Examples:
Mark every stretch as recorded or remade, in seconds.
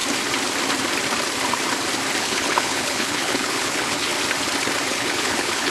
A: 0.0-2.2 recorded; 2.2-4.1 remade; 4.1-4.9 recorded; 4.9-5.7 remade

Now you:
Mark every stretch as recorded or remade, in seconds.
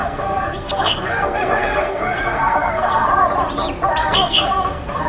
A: 0.0-3.1 remade; 3.1-4.0 recorded; 4.0-5.1 remade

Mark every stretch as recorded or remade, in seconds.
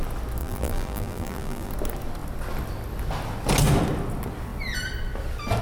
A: 0.0-0.4 recorded; 0.4-1.7 remade; 1.7-5.6 recorded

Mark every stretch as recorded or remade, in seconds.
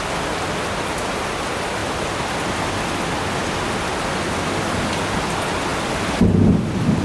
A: 0.0-7.0 recorded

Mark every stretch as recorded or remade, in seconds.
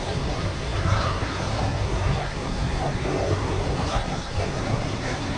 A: 0.0-5.4 remade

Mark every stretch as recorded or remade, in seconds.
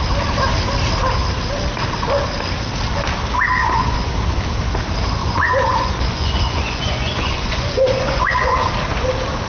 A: 0.0-3.6 recorded; 3.6-4.1 remade; 4.1-5.2 recorded; 5.2-8.7 remade; 8.7-9.5 recorded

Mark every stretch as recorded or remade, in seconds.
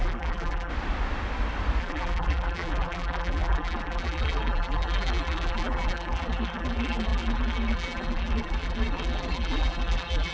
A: 0.0-0.7 remade; 0.7-1.8 recorded; 1.8-10.3 remade